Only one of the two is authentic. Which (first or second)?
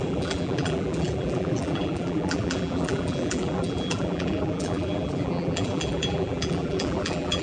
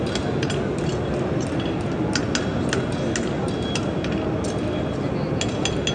second